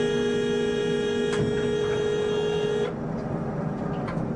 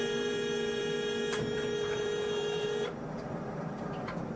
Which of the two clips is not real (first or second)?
second